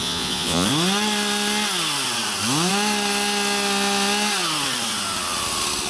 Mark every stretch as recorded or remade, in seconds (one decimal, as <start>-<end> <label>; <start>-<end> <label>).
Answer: 0.0-0.7 remade; 0.7-5.9 recorded